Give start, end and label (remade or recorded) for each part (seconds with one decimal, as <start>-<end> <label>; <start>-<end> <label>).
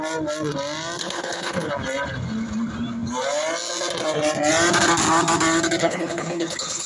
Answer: 0.0-1.0 recorded; 1.0-1.7 remade; 1.7-5.8 recorded; 5.8-6.9 remade